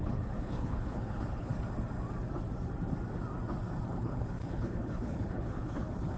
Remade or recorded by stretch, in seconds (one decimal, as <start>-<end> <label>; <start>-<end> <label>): 0.0-1.5 remade; 1.5-3.9 recorded; 3.9-6.2 remade